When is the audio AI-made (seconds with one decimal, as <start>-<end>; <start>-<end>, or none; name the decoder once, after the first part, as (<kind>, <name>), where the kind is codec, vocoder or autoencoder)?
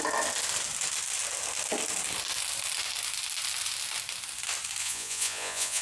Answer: 4.8-5.8 (vocoder, Vocos)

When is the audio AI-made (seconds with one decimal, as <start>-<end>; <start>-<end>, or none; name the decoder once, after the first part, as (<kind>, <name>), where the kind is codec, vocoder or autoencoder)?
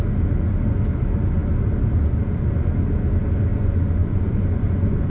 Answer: 3.5-5.1 (vocoder, Vocos)